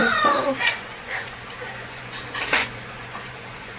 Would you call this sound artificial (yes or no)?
yes